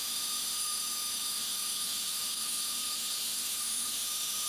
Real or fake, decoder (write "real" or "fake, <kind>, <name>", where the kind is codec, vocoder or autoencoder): fake, autoencoder, DAC-VAE